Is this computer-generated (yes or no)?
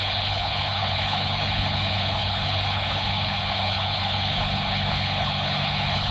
yes